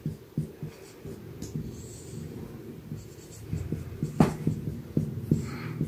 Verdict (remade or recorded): recorded